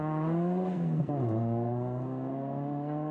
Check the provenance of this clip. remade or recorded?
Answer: remade